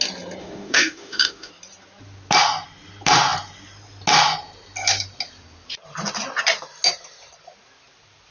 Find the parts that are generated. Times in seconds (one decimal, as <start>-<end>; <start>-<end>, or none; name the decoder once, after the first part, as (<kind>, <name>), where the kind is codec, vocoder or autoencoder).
0.4-1.5 (autoencoder, DAC-VAE)